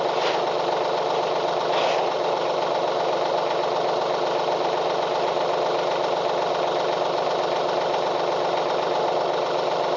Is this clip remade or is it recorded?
recorded